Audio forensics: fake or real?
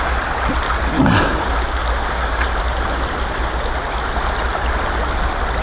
real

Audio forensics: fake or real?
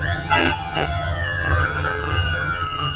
fake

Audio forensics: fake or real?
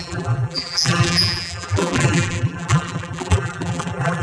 fake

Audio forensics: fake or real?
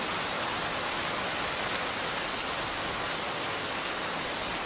real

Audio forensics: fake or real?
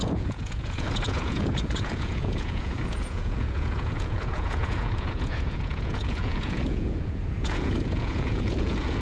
fake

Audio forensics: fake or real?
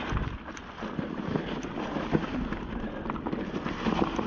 real